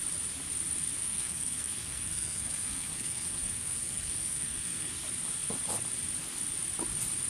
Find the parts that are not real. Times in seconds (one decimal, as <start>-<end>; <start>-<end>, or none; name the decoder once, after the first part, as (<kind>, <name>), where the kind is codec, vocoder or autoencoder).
1.0-4.9 (codec, SNAC)